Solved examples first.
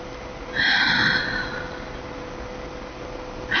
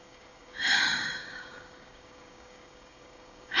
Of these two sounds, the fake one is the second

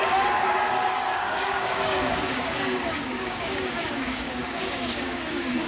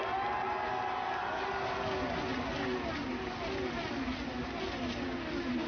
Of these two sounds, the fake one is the first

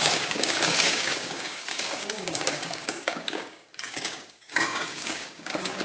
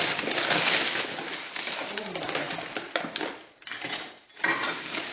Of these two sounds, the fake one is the first